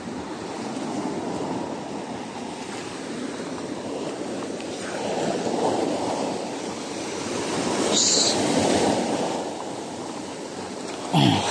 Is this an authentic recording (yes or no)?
yes